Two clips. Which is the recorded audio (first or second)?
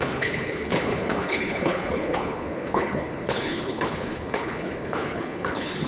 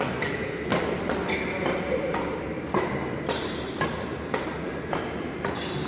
second